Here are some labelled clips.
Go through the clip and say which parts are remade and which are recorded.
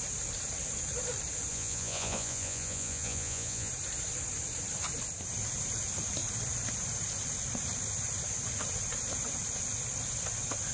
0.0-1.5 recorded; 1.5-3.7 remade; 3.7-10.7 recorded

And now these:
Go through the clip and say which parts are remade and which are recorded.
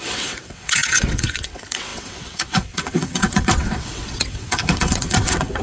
0.0-5.6 remade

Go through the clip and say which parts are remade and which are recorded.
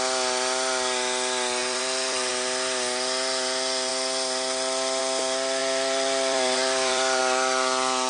0.0-1.6 recorded; 1.6-2.3 remade; 2.3-5.6 recorded; 5.6-7.2 remade; 7.2-8.1 recorded